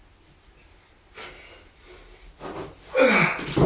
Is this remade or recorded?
recorded